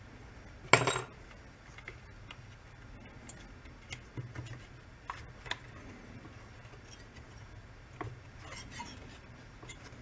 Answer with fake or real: real